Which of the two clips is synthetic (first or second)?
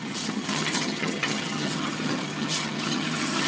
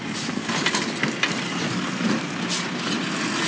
first